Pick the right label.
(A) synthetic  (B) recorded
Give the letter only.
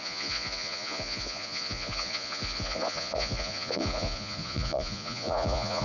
A